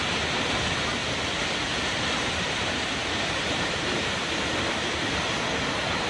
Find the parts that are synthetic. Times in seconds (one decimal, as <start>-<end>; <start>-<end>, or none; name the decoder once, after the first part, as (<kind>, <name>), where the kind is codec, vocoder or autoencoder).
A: 0.0-1.0 (vocoder, BigVGAN v2); 1.9-6.1